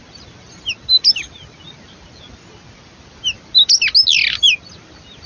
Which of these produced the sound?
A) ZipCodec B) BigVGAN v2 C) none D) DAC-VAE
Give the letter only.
C